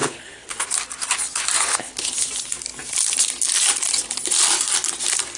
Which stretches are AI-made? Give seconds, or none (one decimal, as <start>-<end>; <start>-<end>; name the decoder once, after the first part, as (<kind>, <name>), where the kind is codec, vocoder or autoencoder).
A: 0.0-0.7 (codec, HILCodec); 1.7-2.3